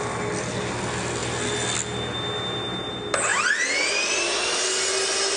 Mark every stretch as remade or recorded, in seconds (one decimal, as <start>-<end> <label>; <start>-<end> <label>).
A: 0.0-5.4 recorded